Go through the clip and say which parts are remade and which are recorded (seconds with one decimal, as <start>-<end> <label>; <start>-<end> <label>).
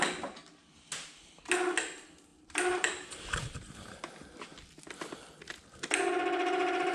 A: 0.0-2.3 recorded; 2.3-4.0 remade; 4.0-6.9 recorded